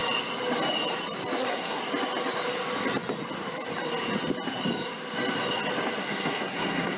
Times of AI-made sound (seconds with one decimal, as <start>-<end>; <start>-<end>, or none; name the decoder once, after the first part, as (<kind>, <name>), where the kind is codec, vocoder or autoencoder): 1.4-1.8 (codec, SNAC); 6.0-7.0